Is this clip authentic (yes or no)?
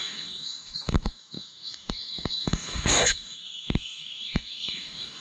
no